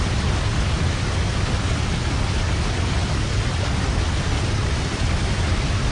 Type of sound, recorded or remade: recorded